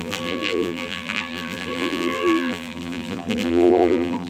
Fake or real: fake